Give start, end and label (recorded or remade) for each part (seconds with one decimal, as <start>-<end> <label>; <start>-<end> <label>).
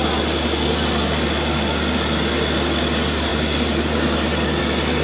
0.0-5.0 recorded